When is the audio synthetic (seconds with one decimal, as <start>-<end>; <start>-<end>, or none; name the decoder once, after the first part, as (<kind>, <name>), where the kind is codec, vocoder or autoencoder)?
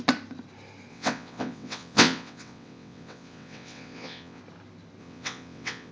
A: 0.9-4.4 (vocoder, WaveNeXt); 5.0-5.9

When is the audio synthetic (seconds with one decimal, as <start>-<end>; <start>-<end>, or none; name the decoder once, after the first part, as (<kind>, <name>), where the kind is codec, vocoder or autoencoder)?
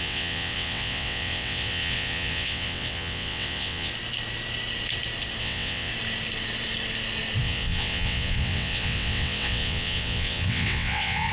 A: 0.0-3.9 (vocoder, WaveNeXt); 5.4-5.9; 7.4-11.3